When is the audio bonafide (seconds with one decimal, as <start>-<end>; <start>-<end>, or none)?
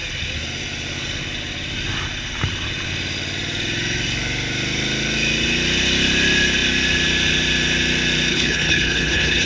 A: 0.0-8.3